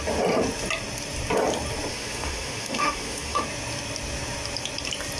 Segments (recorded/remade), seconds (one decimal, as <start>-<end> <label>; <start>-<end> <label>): 0.0-1.9 recorded; 1.9-3.4 remade; 3.4-5.2 recorded